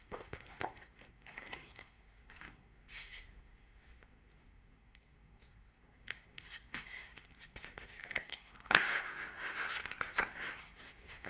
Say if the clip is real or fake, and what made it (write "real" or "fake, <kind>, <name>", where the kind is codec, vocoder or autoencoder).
fake, codec, SNAC